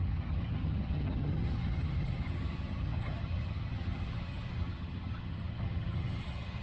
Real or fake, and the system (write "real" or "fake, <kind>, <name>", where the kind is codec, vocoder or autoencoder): fake, vocoder, HiFi-GAN